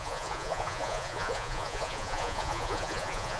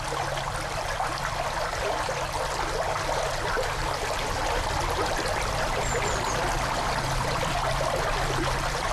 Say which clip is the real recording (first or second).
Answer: second